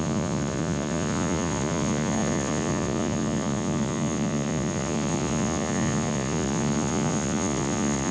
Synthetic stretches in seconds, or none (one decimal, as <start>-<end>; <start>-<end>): 0.0-8.1